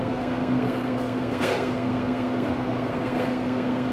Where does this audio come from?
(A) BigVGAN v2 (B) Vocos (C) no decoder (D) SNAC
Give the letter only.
D